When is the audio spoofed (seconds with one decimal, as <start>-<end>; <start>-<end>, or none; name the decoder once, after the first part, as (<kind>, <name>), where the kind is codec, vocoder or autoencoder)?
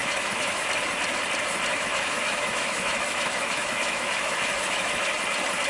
0.0-0.6 (autoencoder, DAC-VAE); 1.7-5.1